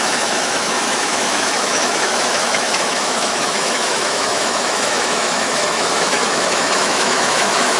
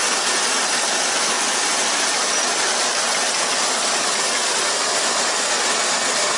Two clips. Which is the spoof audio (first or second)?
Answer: first